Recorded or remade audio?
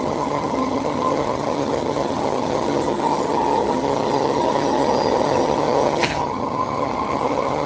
remade